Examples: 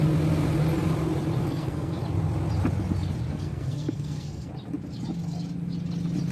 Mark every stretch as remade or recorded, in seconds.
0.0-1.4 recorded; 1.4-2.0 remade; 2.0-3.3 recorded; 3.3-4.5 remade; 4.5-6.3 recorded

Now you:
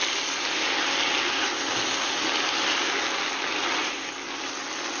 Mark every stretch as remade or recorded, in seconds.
0.0-5.0 recorded

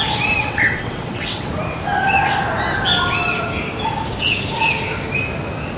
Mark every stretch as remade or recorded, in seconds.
0.0-0.4 recorded; 0.4-1.5 remade; 1.5-5.8 recorded

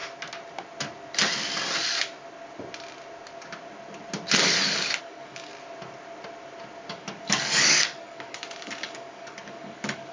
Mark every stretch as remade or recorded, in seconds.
0.0-5.0 recorded; 5.0-5.5 remade; 5.5-6.9 recorded; 6.9-10.1 remade

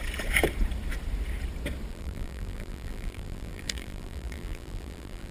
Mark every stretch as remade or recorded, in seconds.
0.0-1.9 recorded; 1.9-5.3 remade

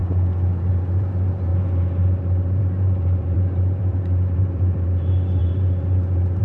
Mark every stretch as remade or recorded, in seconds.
0.0-0.7 recorded; 0.7-6.4 remade